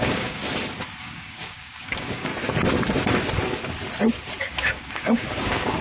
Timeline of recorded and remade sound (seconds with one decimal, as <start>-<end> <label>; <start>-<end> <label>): 0.0-0.4 remade; 0.4-1.0 recorded; 1.0-2.3 remade; 2.3-4.4 recorded; 4.4-5.8 remade